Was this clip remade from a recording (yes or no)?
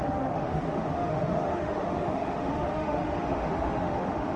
yes